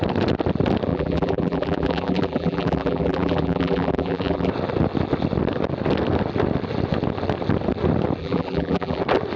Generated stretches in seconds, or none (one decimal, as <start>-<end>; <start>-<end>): 0.9-4.5; 8.2-9.0